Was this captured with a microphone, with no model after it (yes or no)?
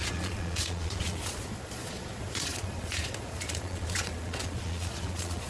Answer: no